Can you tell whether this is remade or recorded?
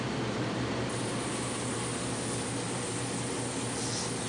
recorded